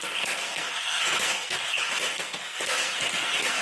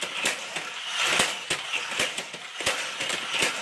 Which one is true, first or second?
second